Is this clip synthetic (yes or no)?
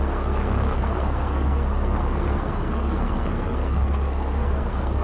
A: yes